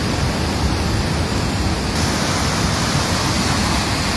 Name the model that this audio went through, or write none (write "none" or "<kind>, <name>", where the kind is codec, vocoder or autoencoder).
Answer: none